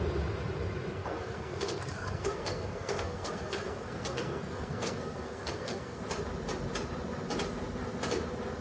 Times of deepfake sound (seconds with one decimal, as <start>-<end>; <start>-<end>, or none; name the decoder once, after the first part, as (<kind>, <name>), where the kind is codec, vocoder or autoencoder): 0.9-6.0 (codec, SNAC)